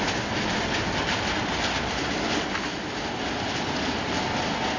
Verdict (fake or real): real